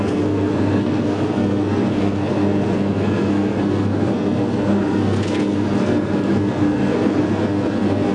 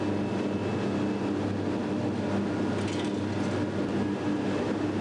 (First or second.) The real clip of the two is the second